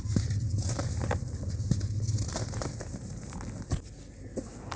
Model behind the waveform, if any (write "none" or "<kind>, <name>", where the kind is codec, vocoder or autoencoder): none